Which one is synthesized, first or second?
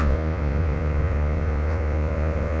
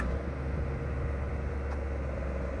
first